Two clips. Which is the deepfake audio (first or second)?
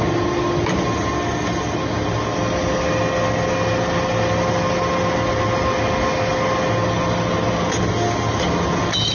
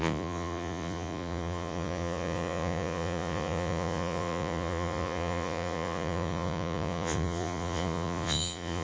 second